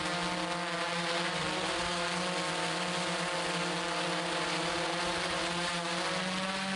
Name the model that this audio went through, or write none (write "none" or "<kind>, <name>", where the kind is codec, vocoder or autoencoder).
none